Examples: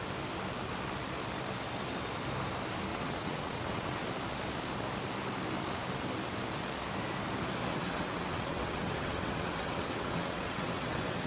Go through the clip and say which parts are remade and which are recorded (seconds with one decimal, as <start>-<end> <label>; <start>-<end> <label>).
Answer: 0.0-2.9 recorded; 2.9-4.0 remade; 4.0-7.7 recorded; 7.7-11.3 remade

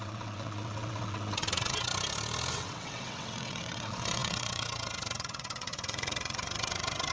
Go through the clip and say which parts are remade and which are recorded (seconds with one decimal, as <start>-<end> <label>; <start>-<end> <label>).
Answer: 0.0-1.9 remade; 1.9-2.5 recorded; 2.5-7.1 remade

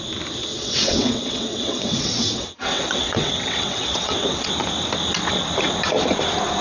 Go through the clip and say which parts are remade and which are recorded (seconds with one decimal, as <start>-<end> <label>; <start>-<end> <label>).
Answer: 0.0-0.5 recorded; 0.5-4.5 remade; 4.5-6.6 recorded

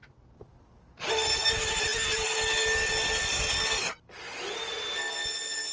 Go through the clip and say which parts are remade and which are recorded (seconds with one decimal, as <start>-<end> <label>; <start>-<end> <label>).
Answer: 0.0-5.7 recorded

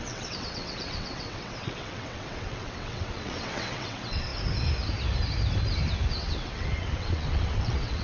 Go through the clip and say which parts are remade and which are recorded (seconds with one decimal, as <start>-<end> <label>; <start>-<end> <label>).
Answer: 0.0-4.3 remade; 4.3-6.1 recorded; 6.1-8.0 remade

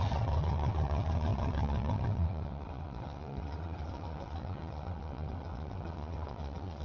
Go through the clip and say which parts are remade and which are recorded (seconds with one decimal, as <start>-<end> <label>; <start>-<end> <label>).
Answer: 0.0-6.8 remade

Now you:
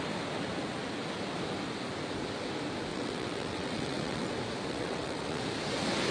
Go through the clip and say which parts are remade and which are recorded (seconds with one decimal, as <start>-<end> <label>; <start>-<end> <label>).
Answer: 0.0-2.9 recorded; 2.9-4.3 remade; 4.3-4.7 recorded; 4.7-5.4 remade; 5.4-6.1 recorded